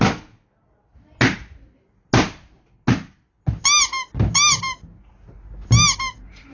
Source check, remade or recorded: recorded